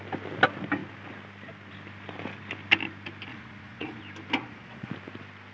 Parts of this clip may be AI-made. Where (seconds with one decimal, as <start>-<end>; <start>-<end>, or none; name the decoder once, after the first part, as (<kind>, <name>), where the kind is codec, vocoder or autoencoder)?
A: 3.3-4.0 (vocoder, Vocos); 4.4-4.9